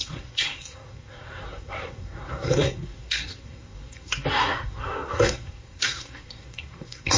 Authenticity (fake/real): fake